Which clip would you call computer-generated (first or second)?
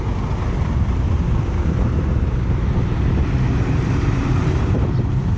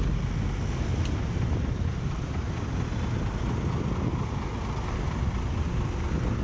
first